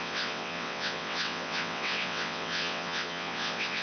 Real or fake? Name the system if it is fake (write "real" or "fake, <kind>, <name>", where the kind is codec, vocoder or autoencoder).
fake, vocoder, WaveNeXt